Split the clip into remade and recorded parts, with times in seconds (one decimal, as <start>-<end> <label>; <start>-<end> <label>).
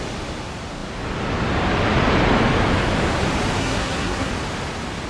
0.0-3.6 recorded; 3.6-4.3 remade; 4.3-5.1 recorded